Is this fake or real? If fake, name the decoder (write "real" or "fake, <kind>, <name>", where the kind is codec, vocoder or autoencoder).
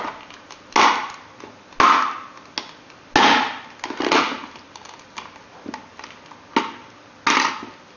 real